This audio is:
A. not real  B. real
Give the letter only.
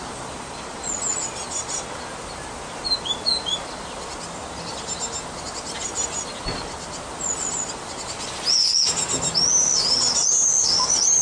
B